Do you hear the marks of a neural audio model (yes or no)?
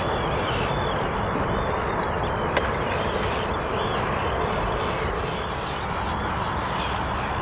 no